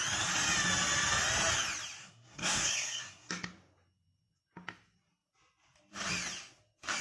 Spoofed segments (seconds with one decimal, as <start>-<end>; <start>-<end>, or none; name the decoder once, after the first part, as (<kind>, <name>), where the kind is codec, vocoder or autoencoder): 2.0-3.3 (codec, SNAC)